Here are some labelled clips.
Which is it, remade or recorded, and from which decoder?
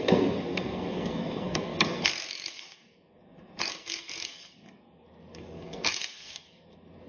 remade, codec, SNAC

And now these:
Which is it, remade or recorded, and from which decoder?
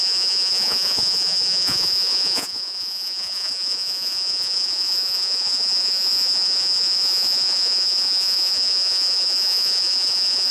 remade, vocoder, Vocos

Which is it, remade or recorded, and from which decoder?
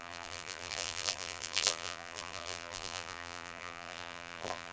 remade, vocoder, BigVGAN v2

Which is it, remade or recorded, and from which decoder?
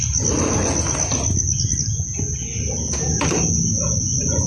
recorded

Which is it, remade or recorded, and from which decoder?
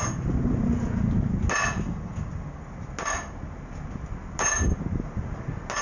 recorded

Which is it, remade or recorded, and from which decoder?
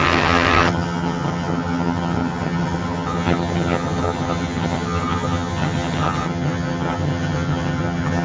remade, vocoder, HiFi-GAN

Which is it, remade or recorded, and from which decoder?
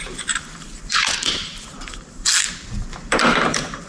remade, vocoder, BigVGAN v2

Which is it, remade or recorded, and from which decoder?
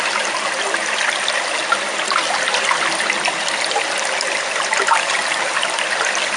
recorded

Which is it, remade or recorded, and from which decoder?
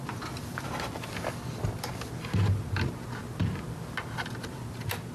recorded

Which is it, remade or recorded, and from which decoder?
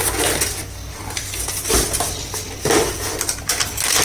recorded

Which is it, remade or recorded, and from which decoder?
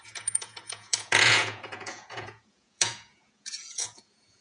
remade, vocoder, Vocos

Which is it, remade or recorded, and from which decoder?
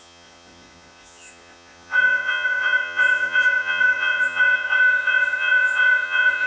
remade, vocoder, Vocos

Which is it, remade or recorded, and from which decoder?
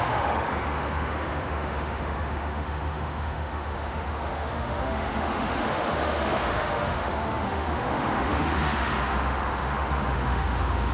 remade, autoencoder, DAC-VAE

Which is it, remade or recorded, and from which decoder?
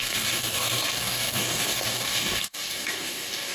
remade, codec, DAC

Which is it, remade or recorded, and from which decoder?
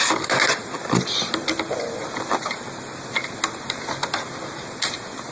recorded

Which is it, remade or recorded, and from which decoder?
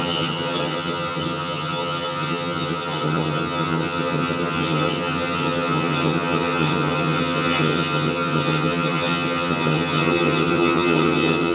remade, vocoder, HiFi-GAN